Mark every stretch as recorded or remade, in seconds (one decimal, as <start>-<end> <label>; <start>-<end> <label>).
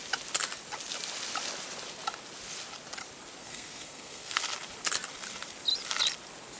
0.0-3.4 recorded; 3.4-4.4 remade; 4.4-6.6 recorded